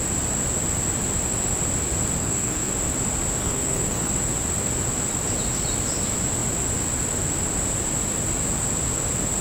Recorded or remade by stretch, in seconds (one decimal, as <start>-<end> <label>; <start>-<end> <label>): 0.0-2.2 recorded; 2.2-2.7 remade; 2.7-3.4 recorded; 3.4-4.1 remade; 4.1-9.4 recorded